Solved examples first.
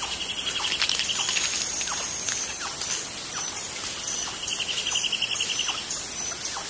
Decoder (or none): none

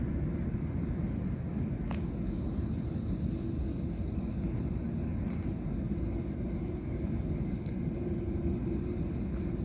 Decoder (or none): none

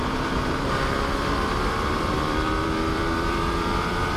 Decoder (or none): vocoder, BigVGAN v2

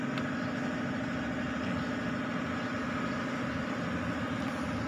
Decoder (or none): none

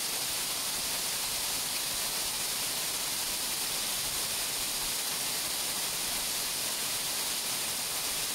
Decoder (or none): none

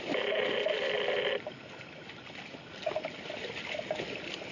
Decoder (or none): none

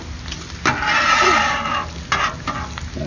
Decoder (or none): none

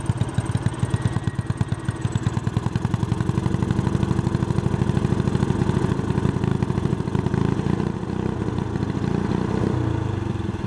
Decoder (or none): none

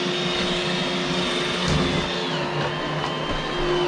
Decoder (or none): none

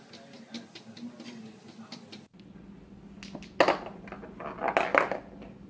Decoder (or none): none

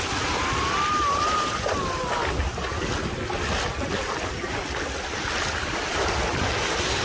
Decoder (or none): none